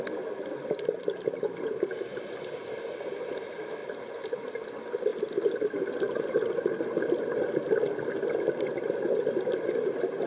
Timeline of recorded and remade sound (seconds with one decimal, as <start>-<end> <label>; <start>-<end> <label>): 0.0-10.3 recorded

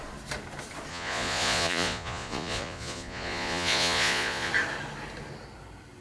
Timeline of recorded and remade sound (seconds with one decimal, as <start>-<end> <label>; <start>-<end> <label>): 0.0-0.9 recorded; 0.9-4.5 remade; 4.5-6.0 recorded

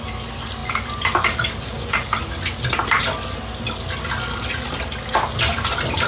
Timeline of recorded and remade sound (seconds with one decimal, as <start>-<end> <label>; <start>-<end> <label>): 0.0-6.1 recorded